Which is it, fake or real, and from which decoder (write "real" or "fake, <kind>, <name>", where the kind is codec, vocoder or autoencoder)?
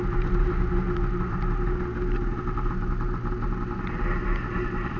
real